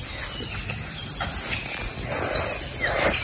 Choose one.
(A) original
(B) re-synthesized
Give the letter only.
A